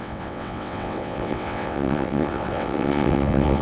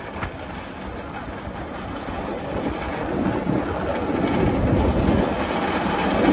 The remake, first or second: first